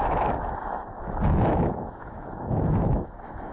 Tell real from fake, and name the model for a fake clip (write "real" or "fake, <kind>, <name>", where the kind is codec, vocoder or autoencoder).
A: fake, autoencoder, DAC-VAE